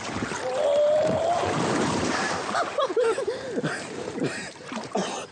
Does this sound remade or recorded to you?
remade